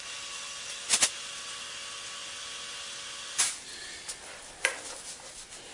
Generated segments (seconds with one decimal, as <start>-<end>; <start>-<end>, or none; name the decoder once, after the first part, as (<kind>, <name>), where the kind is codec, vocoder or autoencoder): none